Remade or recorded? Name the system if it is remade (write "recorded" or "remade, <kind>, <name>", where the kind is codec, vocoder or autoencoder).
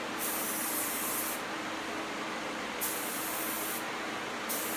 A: recorded